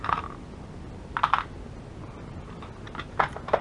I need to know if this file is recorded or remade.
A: recorded